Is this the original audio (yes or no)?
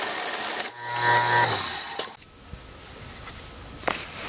yes